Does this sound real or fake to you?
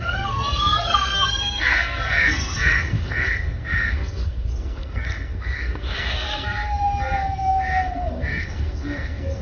fake